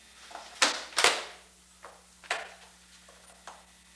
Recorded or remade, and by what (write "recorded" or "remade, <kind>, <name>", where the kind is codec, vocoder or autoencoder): recorded